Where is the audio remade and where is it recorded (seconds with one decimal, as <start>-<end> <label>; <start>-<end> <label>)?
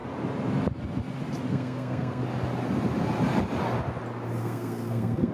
0.0-1.5 recorded; 1.5-2.2 remade; 2.2-4.4 recorded; 4.4-5.3 remade